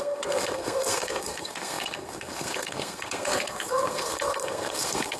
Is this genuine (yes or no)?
no